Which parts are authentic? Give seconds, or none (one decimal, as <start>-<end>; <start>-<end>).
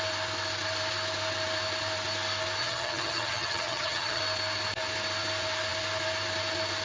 0.0-2.6; 4.2-6.8